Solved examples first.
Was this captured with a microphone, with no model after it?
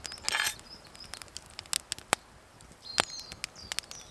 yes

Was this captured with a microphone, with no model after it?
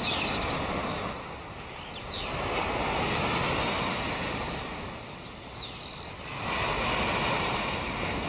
yes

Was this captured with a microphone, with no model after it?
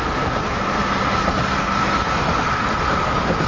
yes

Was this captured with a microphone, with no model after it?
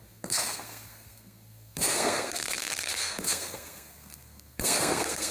no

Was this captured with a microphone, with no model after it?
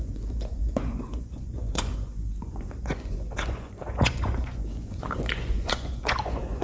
no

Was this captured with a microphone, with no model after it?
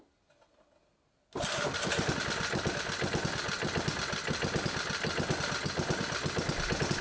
yes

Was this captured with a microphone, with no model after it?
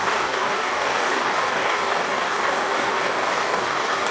no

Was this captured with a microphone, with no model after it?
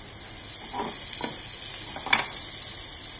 yes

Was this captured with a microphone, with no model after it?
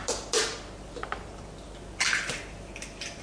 yes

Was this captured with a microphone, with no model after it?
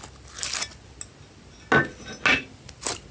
yes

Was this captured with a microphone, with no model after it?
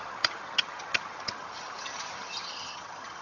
no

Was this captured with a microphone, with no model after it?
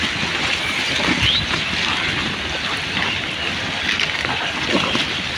yes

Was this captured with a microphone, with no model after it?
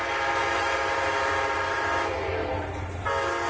yes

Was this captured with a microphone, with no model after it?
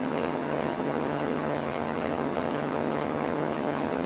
no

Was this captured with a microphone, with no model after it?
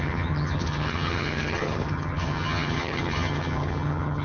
no